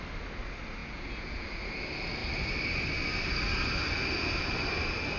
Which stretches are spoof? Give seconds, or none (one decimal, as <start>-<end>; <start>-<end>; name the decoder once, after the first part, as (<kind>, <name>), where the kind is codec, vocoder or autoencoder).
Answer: 0.8-1.6 (vocoder, Vocos)